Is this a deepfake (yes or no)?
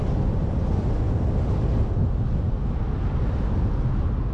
no